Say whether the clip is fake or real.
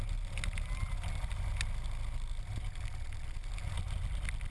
real